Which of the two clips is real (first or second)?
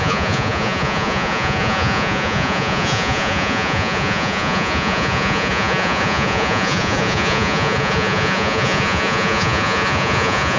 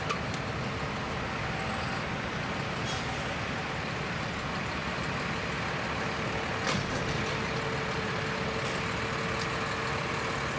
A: second